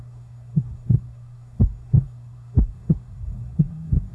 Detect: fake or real fake